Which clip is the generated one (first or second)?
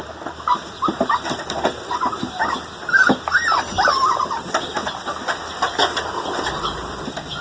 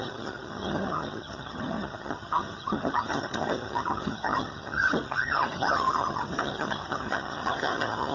second